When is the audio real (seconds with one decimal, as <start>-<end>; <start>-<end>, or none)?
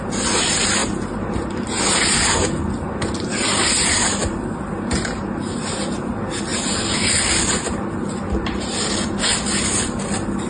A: 0.0-10.5